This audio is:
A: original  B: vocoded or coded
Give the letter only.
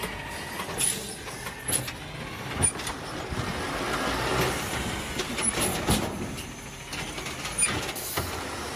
A